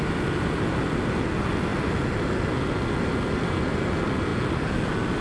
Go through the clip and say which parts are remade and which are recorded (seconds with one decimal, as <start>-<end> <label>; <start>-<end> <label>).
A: 0.0-5.2 recorded